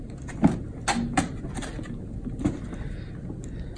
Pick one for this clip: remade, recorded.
recorded